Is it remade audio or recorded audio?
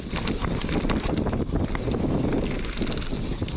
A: recorded